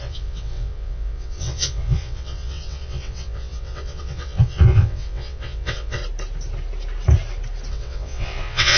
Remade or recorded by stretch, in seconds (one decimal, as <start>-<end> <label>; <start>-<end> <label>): 0.0-6.0 remade; 6.0-7.7 recorded; 7.7-8.8 remade